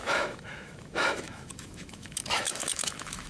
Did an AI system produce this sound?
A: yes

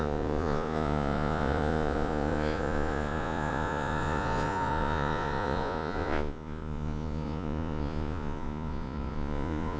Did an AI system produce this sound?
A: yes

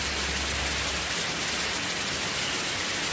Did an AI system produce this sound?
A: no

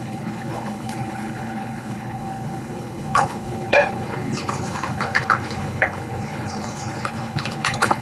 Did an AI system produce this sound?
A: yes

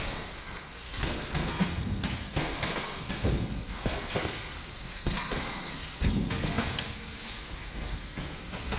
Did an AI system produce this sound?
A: yes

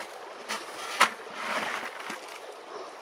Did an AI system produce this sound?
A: no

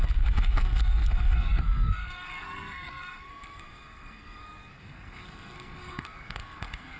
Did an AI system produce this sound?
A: yes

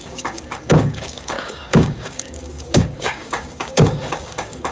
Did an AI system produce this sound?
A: yes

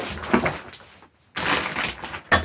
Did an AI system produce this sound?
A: no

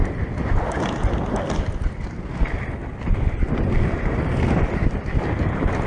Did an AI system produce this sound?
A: no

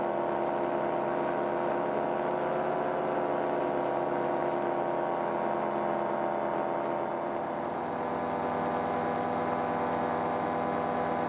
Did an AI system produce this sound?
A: no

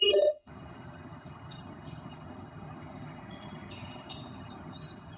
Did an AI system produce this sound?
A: yes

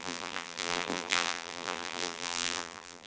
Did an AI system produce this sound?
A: yes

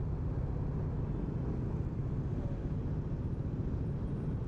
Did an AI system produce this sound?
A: no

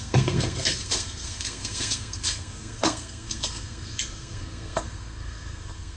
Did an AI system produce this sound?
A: yes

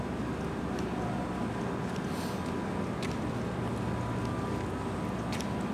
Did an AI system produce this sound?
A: no